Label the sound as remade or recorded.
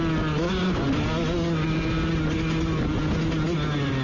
recorded